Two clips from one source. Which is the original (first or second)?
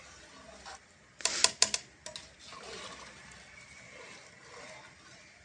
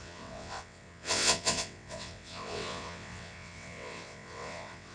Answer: first